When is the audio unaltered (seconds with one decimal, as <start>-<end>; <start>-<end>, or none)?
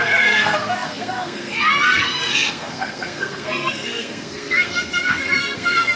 none